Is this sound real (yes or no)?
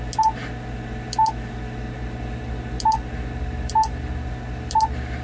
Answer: yes